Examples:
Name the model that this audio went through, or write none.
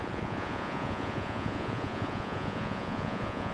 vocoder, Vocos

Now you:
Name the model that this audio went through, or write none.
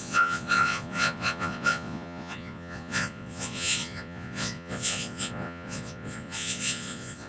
vocoder, Vocos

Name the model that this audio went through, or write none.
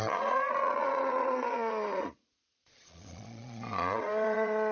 vocoder, Vocos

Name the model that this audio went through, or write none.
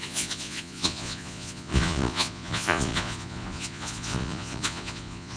vocoder, Vocos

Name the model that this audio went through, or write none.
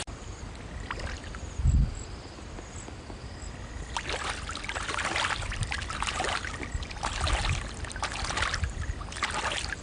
none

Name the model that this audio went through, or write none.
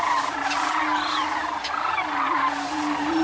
none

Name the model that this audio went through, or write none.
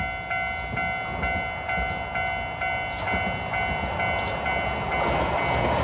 none